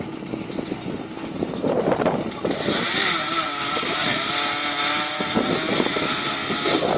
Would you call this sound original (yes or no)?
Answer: yes